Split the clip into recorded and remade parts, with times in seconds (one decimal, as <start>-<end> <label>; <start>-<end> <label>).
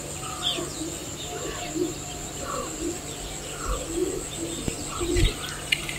0.0-1.0 recorded; 1.0-2.9 remade; 2.9-6.0 recorded